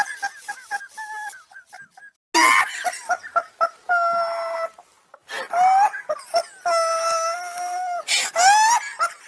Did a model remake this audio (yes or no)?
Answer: no